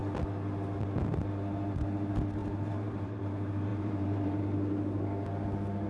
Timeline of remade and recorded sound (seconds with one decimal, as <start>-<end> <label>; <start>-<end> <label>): 0.0-2.4 recorded; 2.4-3.2 remade; 3.2-3.7 recorded; 3.7-4.4 remade; 4.4-5.9 recorded